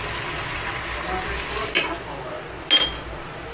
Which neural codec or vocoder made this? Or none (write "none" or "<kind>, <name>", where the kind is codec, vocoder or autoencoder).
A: none